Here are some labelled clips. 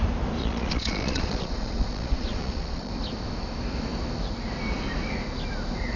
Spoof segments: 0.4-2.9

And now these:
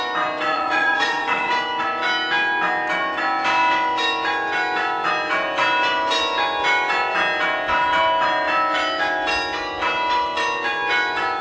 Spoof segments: 0.5-1.5

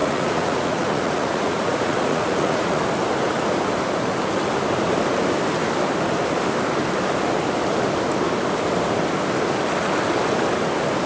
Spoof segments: 0.0-2.8

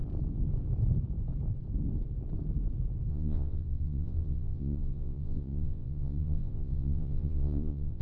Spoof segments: 3.1-8.0

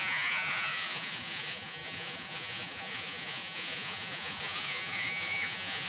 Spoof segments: 0.0-5.9